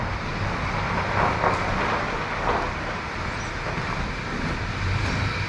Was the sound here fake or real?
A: real